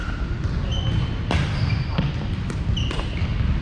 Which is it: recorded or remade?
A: recorded